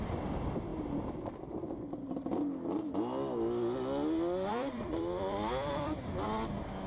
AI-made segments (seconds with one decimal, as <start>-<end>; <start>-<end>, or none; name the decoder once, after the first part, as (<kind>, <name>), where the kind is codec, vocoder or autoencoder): 0.0-0.7 (vocoder, BigVGAN v2); 4.5-6.9